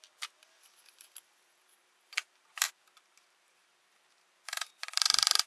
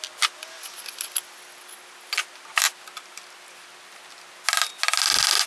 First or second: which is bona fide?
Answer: second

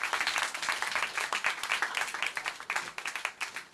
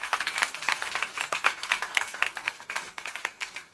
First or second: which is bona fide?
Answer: first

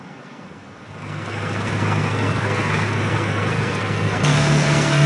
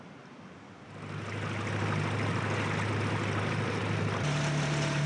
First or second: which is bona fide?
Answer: second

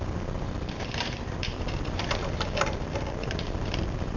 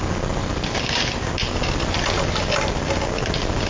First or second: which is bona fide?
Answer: second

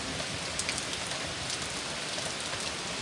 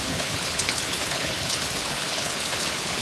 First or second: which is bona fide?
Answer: first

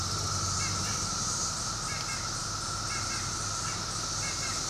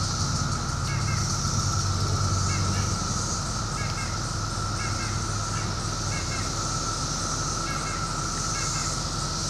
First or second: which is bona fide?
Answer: second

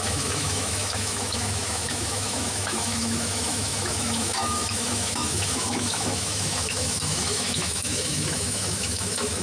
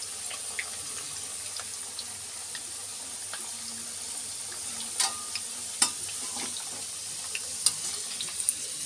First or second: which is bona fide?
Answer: second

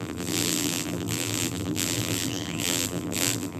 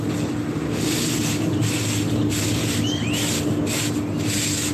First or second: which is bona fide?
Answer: second